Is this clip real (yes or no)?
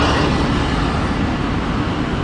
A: yes